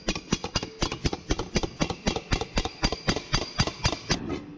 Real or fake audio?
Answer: real